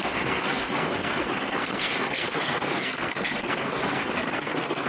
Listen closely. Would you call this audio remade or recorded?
remade